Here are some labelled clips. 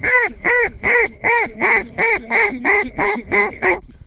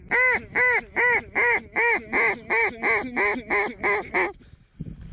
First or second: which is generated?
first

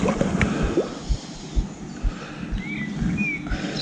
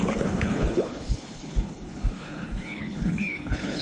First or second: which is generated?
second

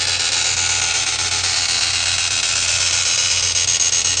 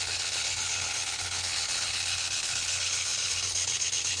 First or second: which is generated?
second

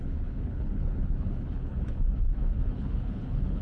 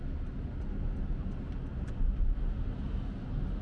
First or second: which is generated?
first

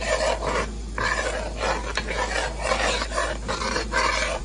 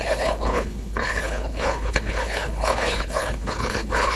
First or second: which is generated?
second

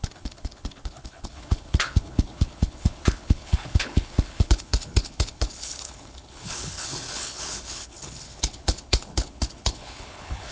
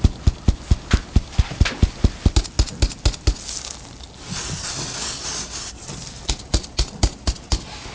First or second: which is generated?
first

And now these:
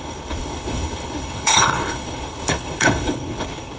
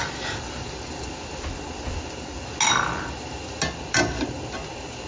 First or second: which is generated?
first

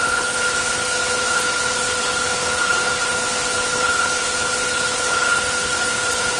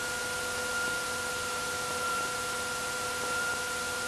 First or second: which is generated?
first